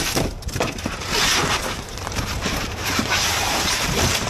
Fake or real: fake